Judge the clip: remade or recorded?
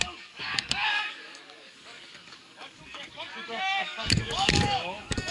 remade